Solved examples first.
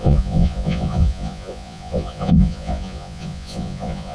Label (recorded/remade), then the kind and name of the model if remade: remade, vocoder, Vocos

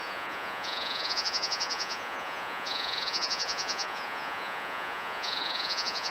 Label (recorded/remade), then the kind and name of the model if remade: remade, vocoder, Vocos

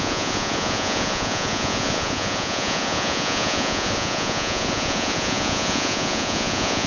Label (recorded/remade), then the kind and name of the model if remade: remade, vocoder, Vocos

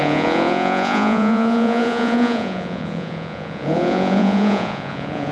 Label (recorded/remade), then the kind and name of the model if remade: remade, vocoder, Vocos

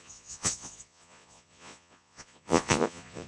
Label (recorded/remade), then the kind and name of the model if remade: remade, vocoder, Vocos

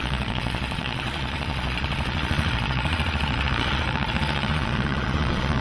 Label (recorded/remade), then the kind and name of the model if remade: remade, vocoder, Vocos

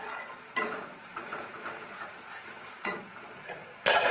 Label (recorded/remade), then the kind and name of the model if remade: remade, vocoder, Vocos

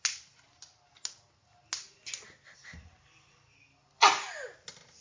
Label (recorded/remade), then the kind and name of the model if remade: recorded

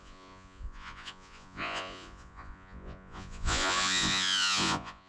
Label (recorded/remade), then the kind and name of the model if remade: remade, vocoder, Vocos